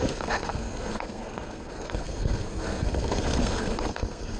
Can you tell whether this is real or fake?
fake